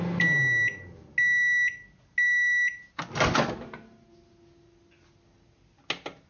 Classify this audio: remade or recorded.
recorded